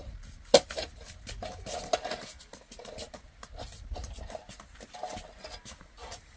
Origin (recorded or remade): recorded